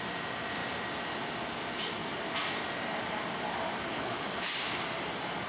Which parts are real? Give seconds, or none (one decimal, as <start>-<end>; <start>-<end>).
0.0-3.9; 4.5-5.5